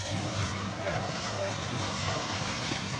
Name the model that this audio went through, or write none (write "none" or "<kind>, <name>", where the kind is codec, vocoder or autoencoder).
codec, SNAC